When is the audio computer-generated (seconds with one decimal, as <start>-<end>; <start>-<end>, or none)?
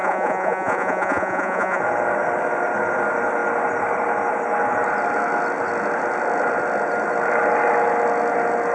0.0-1.8